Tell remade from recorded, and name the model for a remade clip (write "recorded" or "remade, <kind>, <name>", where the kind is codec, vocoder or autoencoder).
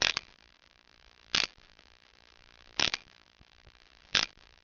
remade, vocoder, BigVGAN v2